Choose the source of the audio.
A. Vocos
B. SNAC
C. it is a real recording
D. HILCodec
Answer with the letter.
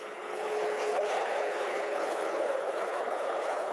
D